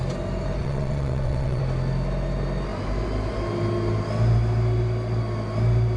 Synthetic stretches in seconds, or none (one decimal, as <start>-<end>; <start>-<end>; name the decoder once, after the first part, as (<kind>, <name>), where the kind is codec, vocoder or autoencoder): 0.6-1.6 (vocoder, WaveNeXt)